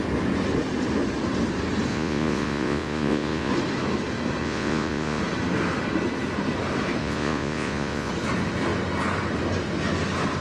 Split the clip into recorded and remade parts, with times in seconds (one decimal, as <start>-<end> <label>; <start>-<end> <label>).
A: 0.0-1.9 recorded; 1.9-3.5 remade; 3.5-4.4 recorded; 4.4-5.2 remade; 5.2-7.0 recorded; 7.0-8.1 remade; 8.1-10.4 recorded